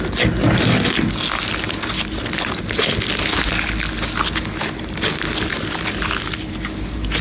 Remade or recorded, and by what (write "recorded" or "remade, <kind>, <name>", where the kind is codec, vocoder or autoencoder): recorded